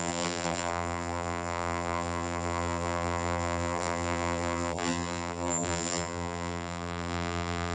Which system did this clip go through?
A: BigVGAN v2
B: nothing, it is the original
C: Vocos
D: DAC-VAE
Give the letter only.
A